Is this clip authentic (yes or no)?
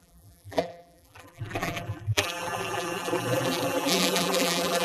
no